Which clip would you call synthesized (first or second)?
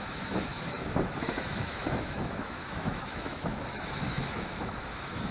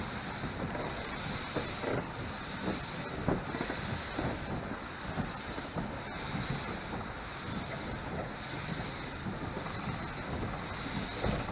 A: first